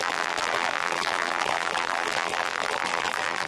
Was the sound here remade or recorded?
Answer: remade